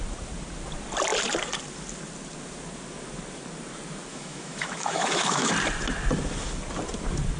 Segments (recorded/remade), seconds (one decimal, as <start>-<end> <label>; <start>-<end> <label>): 0.0-4.1 recorded; 4.1-5.5 remade; 5.5-7.4 recorded